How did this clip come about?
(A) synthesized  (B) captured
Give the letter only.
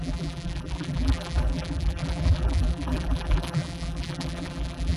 A